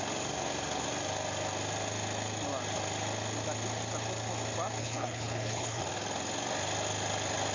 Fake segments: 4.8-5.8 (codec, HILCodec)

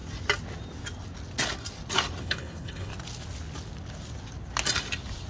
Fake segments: 2.2-2.9 (codec, HILCodec)